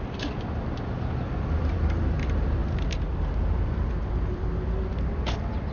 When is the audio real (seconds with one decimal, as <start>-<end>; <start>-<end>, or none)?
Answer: none